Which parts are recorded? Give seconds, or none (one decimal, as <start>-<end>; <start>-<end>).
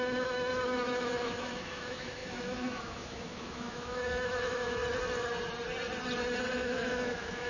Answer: 4.8-6.5